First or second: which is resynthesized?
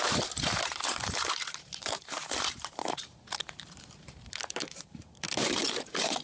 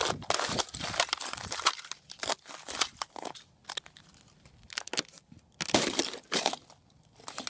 first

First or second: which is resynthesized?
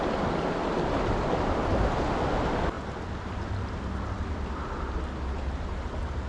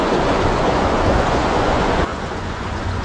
second